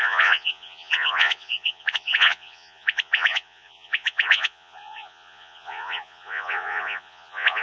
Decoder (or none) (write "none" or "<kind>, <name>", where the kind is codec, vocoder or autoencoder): vocoder, Vocos